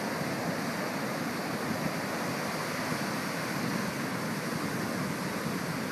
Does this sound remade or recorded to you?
recorded